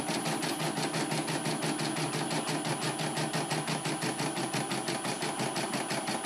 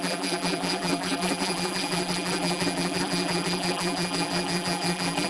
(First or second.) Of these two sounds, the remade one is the second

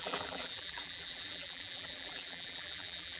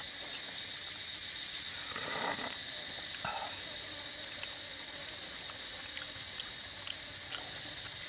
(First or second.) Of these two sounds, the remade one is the first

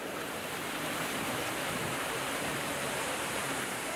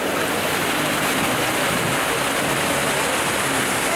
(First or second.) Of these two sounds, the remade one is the first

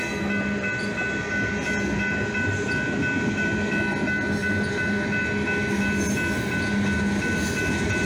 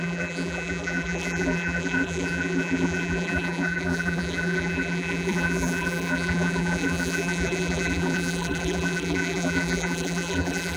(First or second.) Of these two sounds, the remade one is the second